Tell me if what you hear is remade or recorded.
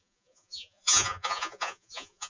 remade